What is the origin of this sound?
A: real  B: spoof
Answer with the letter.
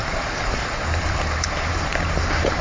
B